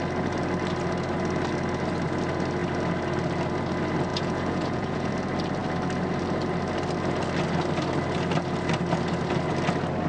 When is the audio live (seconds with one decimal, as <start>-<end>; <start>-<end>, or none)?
0.0-4.1; 5.1-10.1